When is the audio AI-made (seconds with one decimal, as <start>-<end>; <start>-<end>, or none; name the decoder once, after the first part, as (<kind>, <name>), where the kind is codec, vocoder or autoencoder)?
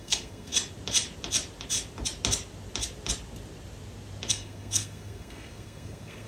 0.0-0.5 (codec, SNAC); 4.3-6.3